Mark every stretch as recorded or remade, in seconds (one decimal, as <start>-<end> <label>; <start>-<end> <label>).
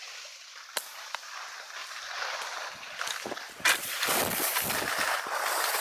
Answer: 0.0-1.8 recorded; 1.8-2.4 remade; 2.4-5.8 recorded